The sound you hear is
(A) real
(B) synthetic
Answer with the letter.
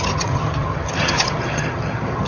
B